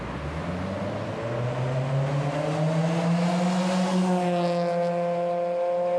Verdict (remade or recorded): recorded